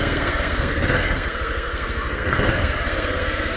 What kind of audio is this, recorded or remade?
remade